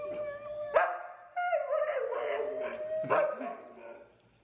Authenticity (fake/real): real